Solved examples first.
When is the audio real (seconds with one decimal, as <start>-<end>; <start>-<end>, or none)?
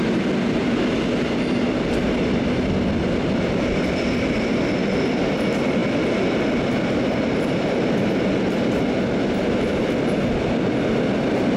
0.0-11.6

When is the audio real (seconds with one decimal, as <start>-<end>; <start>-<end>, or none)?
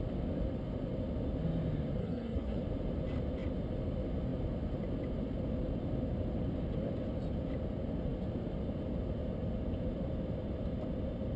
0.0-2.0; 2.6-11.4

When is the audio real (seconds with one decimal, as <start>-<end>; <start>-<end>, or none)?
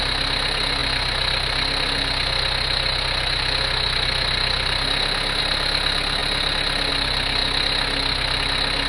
0.0-8.9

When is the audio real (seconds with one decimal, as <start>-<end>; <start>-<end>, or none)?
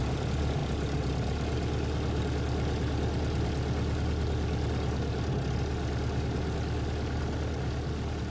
0.0-8.3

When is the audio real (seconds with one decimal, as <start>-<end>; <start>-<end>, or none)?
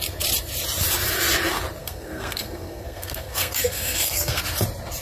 0.0-1.8; 4.4-5.0